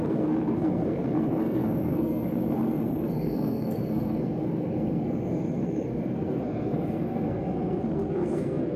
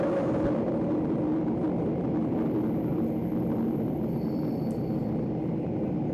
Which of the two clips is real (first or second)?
second